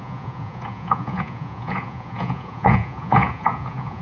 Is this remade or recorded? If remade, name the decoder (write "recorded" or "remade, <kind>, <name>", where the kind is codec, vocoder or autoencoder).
remade, vocoder, Vocos